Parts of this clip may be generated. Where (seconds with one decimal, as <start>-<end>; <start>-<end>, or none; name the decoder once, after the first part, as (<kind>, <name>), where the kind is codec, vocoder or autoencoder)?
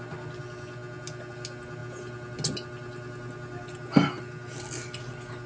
none